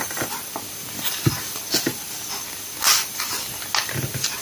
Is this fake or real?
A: real